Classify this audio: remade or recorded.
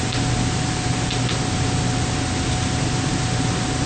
recorded